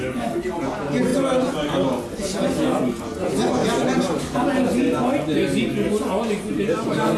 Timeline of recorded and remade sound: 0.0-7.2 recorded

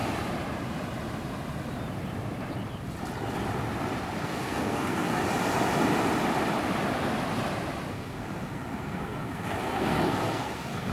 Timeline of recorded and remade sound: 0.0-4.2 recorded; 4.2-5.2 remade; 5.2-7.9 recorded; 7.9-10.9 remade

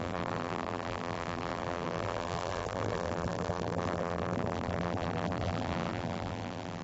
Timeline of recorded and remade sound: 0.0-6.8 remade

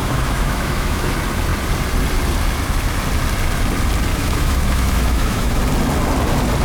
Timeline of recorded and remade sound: 0.0-1.1 remade; 1.1-4.1 recorded; 4.1-5.6 remade; 5.6-6.6 recorded

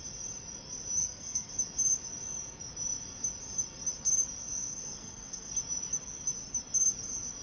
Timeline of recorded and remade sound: 0.0-1.0 recorded; 1.0-1.5 remade; 1.5-4.4 recorded; 4.4-5.5 remade; 5.5-7.4 recorded

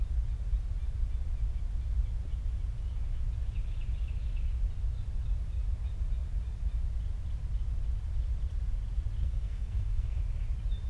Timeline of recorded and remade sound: 0.0-9.2 recorded; 9.2-10.2 remade; 10.2-10.9 recorded

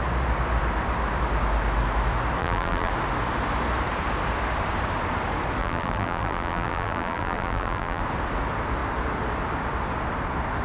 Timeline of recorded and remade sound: 0.0-2.4 recorded; 2.4-2.9 remade; 2.9-5.6 recorded; 5.6-8.0 remade; 8.0-10.6 recorded

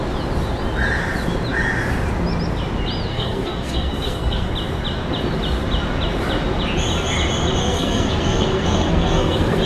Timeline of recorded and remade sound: 0.0-3.1 recorded; 3.1-4.5 remade; 4.5-7.6 recorded; 7.6-9.7 remade